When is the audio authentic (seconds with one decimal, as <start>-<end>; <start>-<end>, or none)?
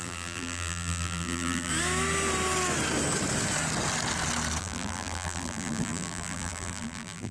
1.7-4.6